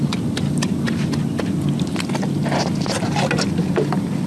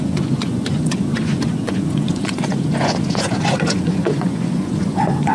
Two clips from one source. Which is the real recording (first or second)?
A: first